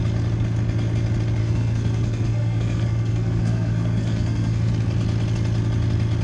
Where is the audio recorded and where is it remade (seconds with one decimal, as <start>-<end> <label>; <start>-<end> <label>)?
0.0-1.4 recorded; 1.4-4.7 remade; 4.7-6.2 recorded